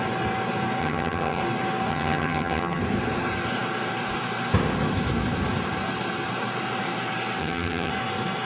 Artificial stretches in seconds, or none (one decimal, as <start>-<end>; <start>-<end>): 0.8-1.4; 1.9-2.8; 7.4-7.9

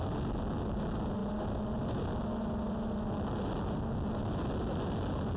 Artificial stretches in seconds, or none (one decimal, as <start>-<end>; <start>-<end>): none